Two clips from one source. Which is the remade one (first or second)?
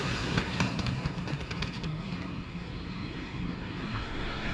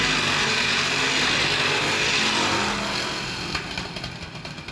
first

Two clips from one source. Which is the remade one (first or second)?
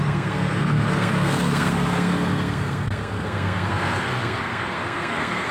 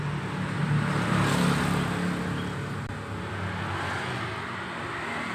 first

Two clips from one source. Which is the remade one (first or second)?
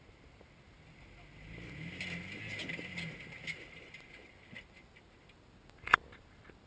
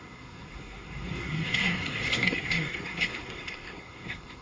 second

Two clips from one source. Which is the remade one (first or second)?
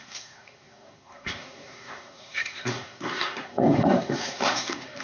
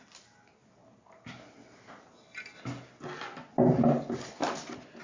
first